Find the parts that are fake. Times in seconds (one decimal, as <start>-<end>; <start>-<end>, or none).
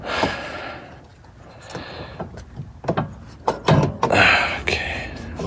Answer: none